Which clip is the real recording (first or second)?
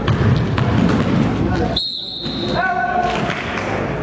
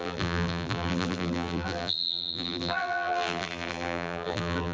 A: first